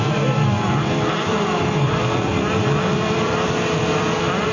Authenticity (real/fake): fake